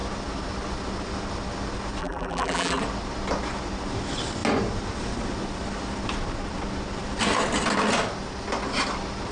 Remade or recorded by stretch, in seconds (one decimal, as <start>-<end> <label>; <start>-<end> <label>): 0.0-2.0 recorded; 2.0-2.8 remade; 2.8-9.3 recorded